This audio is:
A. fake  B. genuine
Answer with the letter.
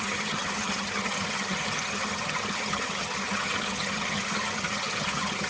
A